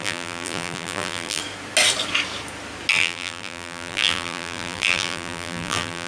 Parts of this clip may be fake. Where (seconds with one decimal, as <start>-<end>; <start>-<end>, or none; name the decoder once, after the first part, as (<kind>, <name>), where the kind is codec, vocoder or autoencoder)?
0.0-1.4 (vocoder, BigVGAN v2); 2.9-6.1